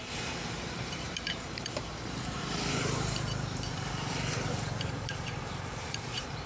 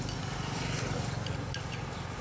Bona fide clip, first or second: second